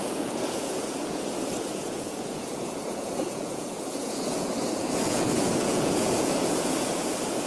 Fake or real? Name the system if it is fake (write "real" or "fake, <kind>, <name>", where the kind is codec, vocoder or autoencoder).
fake, vocoder, Vocos